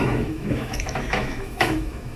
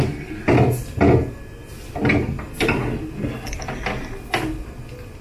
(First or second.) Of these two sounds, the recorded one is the second